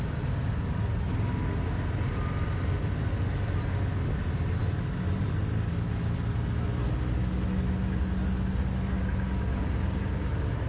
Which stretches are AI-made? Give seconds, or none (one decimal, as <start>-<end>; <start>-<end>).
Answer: none

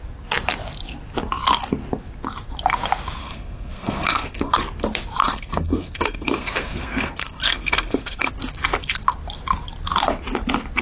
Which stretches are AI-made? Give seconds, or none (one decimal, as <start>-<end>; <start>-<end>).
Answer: 3.2-4.6; 5.2-8.3

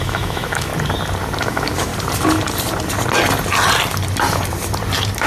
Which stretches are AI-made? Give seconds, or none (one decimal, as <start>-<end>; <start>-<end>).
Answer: 0.0-0.7; 1.4-1.9

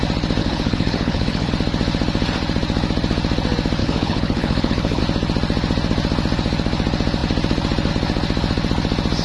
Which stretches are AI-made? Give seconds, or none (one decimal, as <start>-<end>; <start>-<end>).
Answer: 0.4-1.5; 3.8-5.0

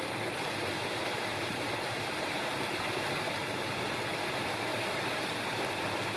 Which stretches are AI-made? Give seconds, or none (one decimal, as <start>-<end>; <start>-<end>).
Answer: 1.3-3.7; 4.7-5.6